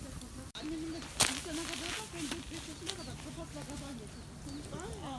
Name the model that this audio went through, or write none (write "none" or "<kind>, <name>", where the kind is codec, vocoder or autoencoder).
none